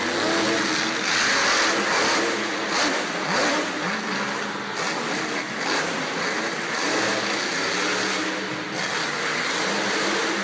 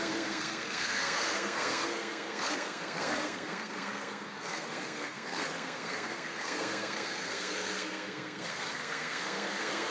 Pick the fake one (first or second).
second